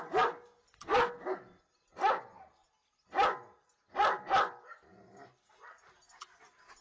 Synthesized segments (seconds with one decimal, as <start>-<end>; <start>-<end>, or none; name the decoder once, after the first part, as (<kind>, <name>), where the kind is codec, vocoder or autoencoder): none

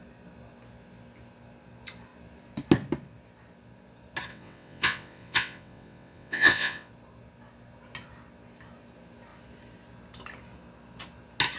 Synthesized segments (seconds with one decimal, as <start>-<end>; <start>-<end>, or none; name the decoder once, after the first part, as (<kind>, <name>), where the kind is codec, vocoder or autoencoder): 4.3-6.9 (vocoder, WaveNeXt)

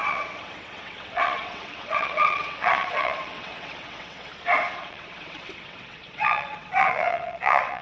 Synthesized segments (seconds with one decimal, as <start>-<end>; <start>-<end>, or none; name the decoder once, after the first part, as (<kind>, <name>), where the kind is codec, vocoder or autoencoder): 0.0-4.3 (vocoder, WaveNeXt); 4.8-7.8

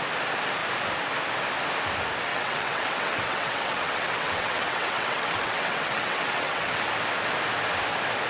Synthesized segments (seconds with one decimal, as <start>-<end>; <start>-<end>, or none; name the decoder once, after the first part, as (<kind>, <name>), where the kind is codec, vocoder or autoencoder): 2.3-6.9 (vocoder, WaveNeXt)

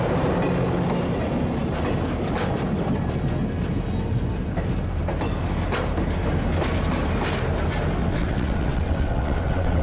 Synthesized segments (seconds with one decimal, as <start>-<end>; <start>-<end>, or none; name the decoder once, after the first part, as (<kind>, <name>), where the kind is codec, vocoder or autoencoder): 8.0-9.8 (vocoder, WaveNeXt)